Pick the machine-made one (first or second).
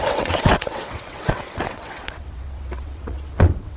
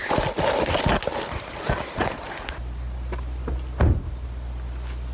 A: first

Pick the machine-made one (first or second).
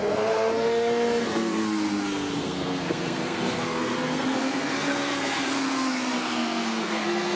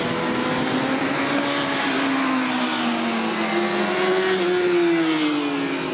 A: first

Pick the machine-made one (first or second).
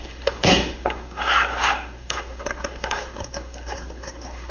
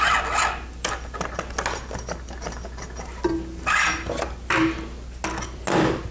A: first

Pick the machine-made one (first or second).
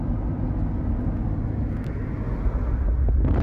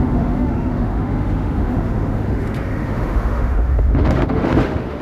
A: second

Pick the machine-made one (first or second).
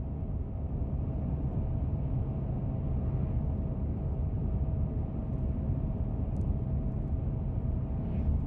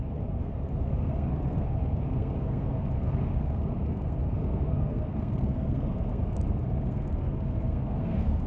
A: second